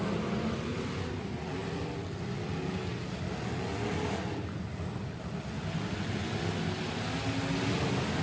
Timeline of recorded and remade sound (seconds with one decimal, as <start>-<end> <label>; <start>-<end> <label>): 0.0-8.2 recorded